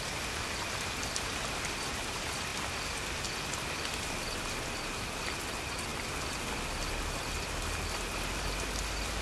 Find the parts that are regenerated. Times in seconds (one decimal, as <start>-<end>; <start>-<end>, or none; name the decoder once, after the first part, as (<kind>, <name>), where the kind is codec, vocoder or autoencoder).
none